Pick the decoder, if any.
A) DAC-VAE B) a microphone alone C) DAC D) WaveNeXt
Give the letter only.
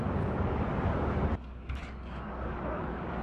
C